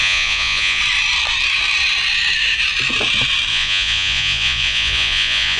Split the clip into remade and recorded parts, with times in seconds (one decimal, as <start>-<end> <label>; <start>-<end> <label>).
0.0-0.8 remade; 0.8-3.5 recorded; 3.5-5.6 remade